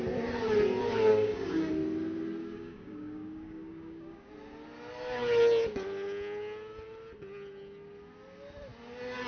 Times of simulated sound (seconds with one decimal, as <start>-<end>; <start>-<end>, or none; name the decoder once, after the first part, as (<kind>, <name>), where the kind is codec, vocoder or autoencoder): 1.1-1.7 (codec, DAC); 2.4-4.3